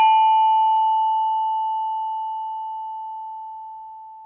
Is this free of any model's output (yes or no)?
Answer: yes